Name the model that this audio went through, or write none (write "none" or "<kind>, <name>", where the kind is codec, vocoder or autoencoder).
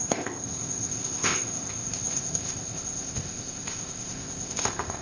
codec, ZipCodec